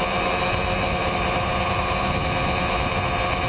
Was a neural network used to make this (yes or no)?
no